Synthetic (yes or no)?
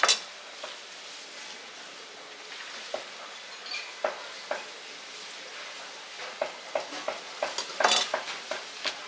no